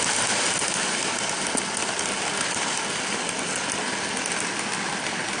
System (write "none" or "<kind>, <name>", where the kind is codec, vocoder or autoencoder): none